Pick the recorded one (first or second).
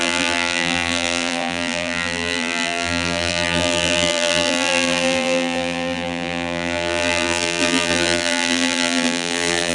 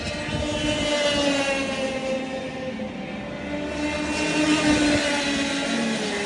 second